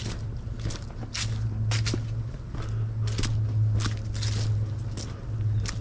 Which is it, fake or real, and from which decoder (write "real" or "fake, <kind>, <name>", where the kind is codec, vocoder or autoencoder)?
real